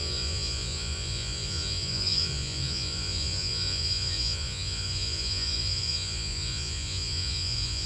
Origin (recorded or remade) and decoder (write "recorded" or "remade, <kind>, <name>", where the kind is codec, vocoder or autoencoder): remade, vocoder, Vocos